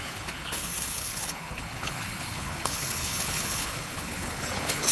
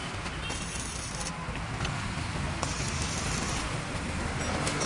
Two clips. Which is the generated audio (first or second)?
first